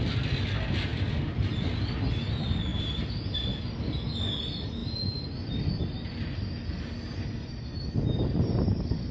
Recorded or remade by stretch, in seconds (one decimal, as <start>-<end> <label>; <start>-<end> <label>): 0.0-9.1 recorded